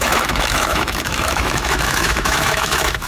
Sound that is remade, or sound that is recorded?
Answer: remade